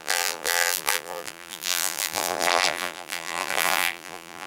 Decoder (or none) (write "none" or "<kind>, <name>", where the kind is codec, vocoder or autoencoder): vocoder, BigVGAN v2